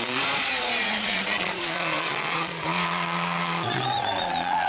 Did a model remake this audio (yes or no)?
yes